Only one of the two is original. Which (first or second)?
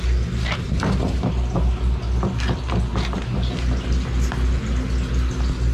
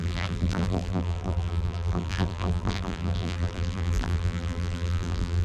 first